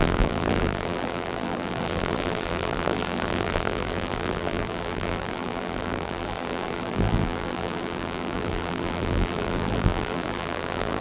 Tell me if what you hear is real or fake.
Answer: fake